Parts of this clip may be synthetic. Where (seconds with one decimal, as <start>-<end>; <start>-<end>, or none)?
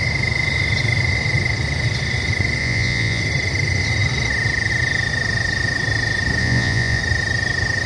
2.6-3.2; 6.4-7.0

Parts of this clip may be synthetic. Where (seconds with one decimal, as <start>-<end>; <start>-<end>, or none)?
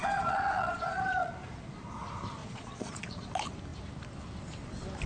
0.0-1.3; 2.4-3.3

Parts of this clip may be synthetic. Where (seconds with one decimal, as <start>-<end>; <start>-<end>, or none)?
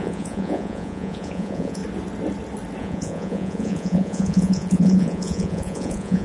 0.0-1.8; 2.8-6.2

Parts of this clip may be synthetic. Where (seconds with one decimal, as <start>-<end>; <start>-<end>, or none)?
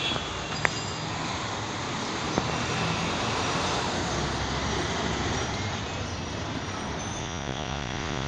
7.2-8.3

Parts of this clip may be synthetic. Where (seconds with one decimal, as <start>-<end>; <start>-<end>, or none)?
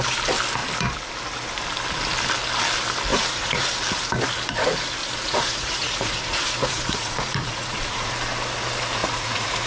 3.1-3.7; 5.0-8.1; 9.0-9.7